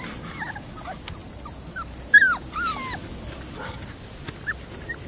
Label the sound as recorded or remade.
recorded